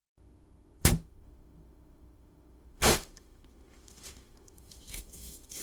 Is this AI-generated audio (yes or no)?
yes